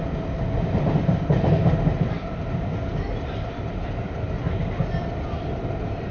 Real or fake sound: real